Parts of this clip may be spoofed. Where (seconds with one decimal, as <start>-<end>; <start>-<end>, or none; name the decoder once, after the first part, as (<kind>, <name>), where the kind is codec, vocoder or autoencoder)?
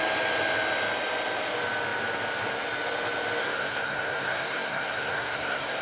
3.4-5.8 (codec, SNAC)